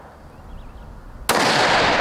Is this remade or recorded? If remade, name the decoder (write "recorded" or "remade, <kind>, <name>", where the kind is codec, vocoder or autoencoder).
recorded